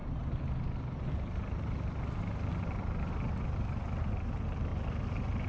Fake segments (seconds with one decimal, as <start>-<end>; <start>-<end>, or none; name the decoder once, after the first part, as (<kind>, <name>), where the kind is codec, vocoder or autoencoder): none